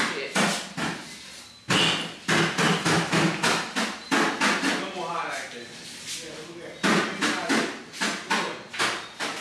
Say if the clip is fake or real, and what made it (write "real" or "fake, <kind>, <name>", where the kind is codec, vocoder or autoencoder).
real